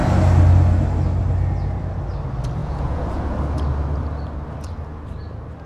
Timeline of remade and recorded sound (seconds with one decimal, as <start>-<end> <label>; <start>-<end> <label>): 0.0-2.6 recorded; 2.6-3.4 remade; 3.4-5.7 recorded